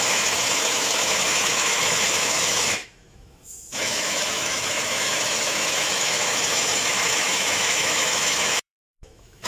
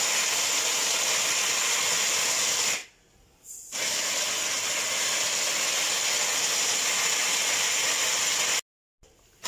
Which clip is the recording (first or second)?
second